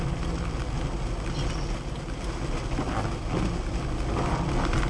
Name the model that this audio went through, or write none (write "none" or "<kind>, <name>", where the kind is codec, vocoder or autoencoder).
none